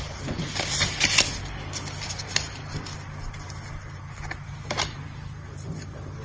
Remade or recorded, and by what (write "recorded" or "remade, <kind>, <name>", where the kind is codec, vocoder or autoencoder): recorded